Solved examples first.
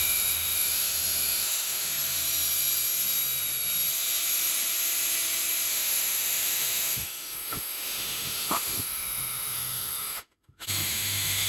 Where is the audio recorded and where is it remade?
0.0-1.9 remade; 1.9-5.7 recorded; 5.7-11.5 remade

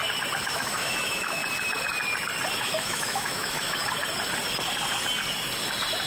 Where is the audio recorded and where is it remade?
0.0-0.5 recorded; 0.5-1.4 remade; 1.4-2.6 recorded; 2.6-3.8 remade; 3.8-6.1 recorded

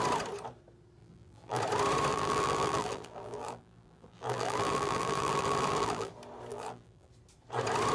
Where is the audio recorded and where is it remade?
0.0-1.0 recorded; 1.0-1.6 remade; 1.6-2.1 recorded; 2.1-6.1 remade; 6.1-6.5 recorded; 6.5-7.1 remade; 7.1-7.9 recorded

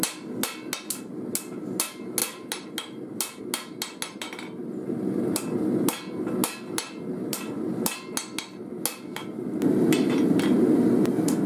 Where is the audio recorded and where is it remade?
0.0-11.5 recorded